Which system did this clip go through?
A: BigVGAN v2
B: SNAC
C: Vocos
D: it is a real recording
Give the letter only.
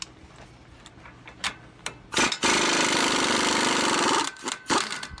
D